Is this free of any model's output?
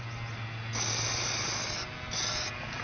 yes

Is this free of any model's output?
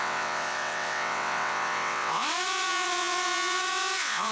no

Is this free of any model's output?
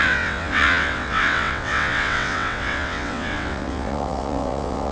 no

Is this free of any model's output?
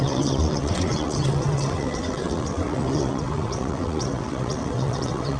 no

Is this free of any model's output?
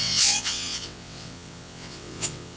no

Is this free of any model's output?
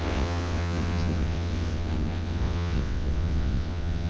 no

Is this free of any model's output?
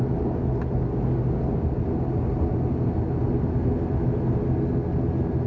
yes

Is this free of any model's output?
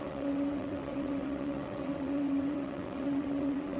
no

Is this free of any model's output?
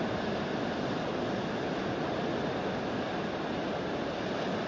yes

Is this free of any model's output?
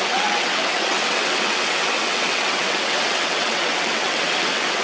no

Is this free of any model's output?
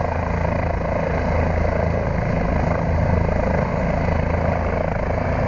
yes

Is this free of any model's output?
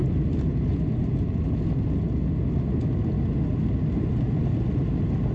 yes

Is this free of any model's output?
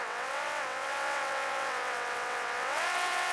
no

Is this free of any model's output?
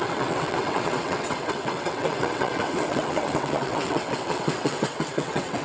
no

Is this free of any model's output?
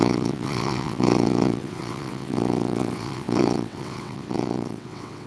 no